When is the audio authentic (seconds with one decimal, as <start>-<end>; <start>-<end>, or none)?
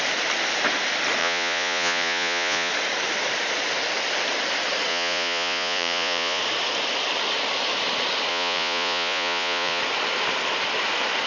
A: 0.0-1.2; 2.7-4.9; 6.4-8.3; 9.8-11.3